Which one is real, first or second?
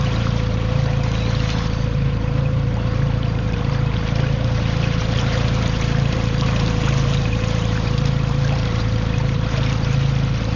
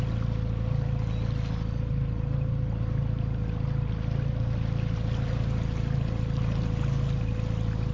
second